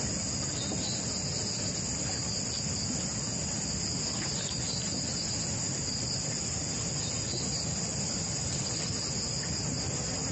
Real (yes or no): yes